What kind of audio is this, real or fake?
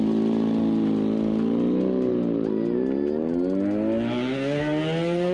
real